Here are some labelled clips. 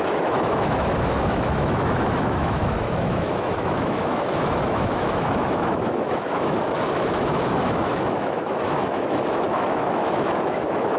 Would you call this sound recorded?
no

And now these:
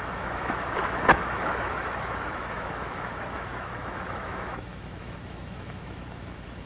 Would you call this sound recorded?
no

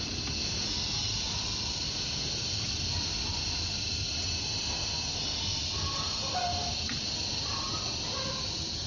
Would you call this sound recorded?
yes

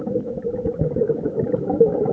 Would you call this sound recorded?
no